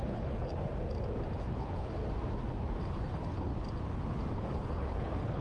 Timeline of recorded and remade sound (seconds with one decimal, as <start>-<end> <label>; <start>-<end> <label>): 0.0-0.5 remade; 0.5-1.4 recorded; 1.4-2.0 remade; 2.0-3.0 recorded; 3.0-3.5 remade; 3.5-4.3 recorded; 4.3-5.4 remade